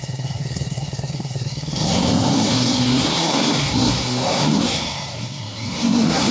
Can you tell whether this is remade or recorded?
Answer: remade